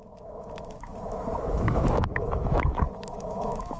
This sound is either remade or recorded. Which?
remade